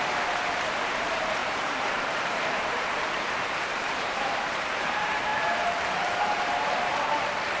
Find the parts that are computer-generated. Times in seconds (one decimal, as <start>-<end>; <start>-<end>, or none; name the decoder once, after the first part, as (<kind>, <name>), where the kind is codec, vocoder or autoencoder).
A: 0.0-6.9 (vocoder, BigVGAN v2)